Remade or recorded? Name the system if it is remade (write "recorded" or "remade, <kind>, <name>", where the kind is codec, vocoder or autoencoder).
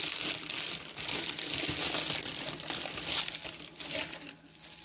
recorded